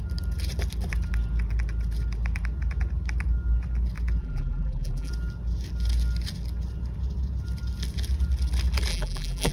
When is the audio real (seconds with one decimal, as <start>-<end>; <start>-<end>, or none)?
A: 0.0-4.2; 5.1-8.9